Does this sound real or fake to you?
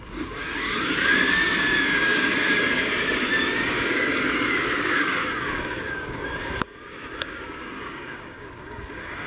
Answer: fake